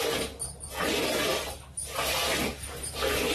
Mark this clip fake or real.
real